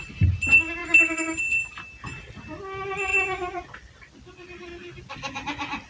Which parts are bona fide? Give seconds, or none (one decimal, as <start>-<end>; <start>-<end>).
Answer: 0.0-0.8; 1.4-5.9